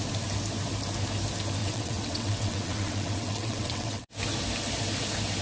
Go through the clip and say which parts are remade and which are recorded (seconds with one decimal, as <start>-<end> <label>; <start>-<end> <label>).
0.0-1.6 recorded; 1.6-4.1 remade; 4.1-5.4 recorded